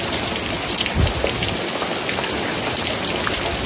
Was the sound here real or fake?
real